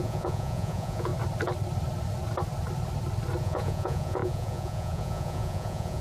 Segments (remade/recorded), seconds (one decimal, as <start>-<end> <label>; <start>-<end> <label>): 0.0-1.1 remade; 1.1-3.4 recorded; 3.4-6.0 remade